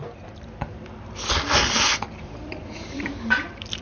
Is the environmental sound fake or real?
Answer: fake